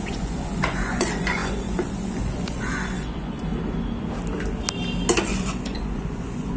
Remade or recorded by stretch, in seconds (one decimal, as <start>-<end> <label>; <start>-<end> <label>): 0.0-3.5 remade; 3.5-5.2 recorded; 5.2-6.6 remade